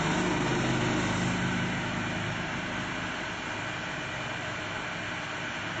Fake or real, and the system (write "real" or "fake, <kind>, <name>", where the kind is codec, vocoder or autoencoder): real